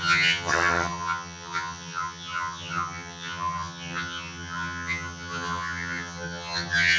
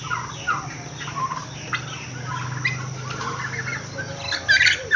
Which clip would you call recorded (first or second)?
second